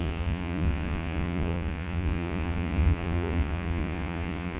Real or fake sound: fake